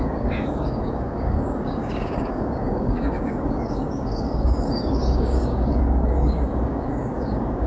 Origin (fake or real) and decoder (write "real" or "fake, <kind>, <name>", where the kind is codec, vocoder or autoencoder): fake, codec, DAC